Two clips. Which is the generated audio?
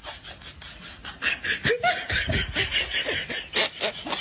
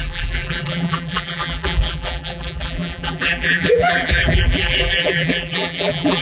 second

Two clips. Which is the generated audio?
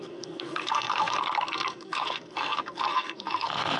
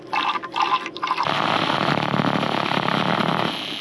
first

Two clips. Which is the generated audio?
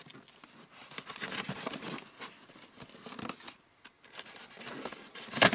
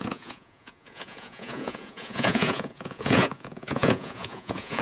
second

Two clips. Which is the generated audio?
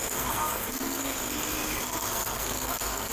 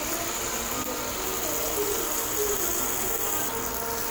first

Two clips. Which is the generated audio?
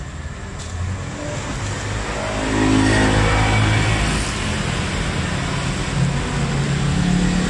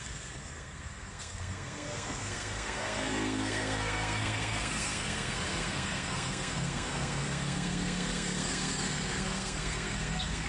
second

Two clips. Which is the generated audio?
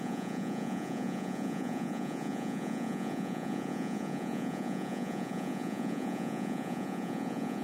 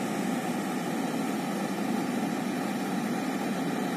first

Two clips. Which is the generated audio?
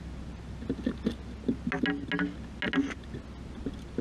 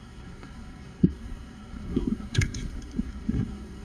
second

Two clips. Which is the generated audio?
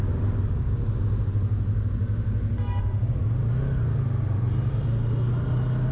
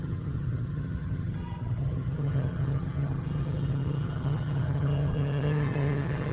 second